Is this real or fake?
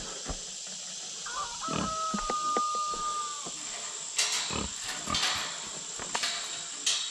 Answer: real